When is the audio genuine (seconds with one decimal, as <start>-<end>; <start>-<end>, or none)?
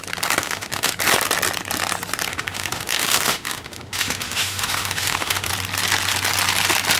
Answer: 0.0-0.4; 0.9-2.3; 5.5-7.0